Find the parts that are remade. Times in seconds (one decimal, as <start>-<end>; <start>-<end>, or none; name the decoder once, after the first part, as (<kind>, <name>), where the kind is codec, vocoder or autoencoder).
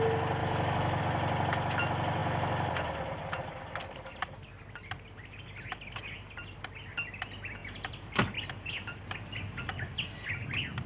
0.4-1.0 (autoencoder, DAC-VAE)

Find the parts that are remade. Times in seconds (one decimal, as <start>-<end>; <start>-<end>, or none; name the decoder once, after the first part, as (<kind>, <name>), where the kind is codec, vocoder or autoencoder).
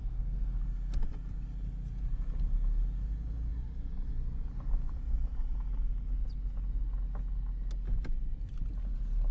0.0-0.6 (codec, SNAC)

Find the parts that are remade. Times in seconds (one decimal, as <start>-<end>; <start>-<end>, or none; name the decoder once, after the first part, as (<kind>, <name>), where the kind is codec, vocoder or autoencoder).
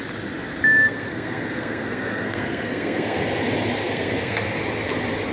0.8-3.2 (codec, SNAC); 3.8-4.5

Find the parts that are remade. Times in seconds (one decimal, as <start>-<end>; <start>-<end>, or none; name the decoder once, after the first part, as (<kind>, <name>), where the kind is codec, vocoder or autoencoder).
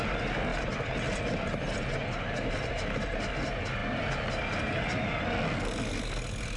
none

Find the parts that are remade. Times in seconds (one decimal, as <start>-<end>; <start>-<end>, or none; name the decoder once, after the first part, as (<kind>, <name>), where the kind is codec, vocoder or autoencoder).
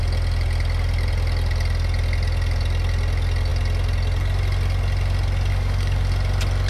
5.5-6.1 (codec, DAC)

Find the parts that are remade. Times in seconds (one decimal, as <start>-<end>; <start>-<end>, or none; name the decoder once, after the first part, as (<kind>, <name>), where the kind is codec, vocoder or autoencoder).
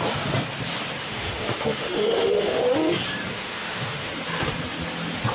1.0-2.6 (autoencoder, DAC-VAE); 3.3-4.1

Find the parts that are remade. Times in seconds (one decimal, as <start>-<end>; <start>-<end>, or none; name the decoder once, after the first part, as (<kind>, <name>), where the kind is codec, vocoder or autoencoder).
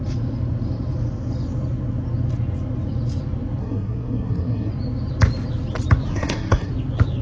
3.6-4.7 (codec, SNAC); 6.1-6.7